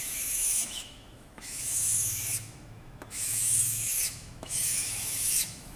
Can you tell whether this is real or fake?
fake